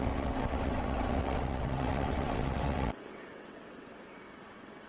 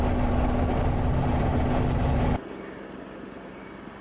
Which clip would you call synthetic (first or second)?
first